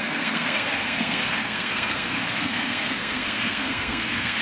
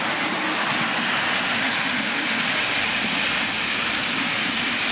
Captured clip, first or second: second